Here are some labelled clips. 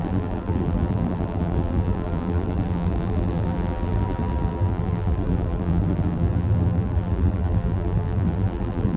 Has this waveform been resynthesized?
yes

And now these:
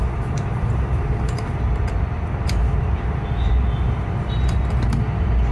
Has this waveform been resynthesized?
yes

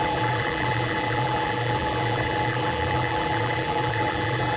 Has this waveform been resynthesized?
yes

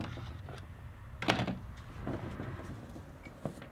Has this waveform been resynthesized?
no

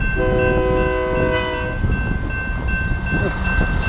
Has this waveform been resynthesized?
no